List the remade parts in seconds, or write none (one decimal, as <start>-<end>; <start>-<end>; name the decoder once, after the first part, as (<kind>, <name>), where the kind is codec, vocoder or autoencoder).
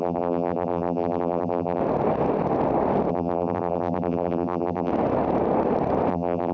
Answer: 0.0-1.8 (vocoder, BigVGAN v2); 3.1-4.9; 6.1-6.5